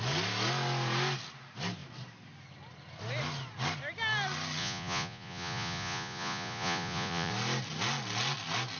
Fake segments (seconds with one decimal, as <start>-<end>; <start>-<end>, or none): 4.6-7.3